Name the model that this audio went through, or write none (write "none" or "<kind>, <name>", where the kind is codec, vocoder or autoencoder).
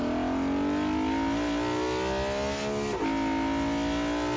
none